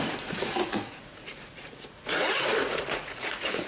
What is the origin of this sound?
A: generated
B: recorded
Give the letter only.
A